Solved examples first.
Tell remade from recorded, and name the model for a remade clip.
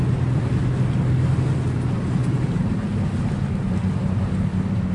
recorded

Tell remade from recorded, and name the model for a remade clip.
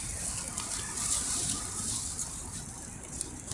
recorded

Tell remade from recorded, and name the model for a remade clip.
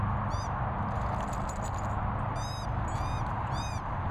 recorded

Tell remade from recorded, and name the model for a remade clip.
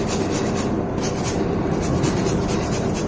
remade, vocoder, BigVGAN v2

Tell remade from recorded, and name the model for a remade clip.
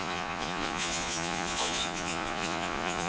remade, vocoder, Vocos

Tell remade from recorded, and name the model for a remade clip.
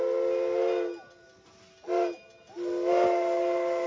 recorded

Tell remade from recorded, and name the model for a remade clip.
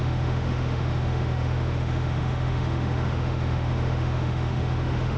remade, autoencoder, DAC-VAE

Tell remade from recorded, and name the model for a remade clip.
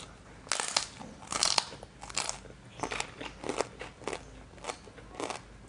recorded